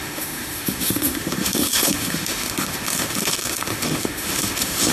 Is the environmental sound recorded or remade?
remade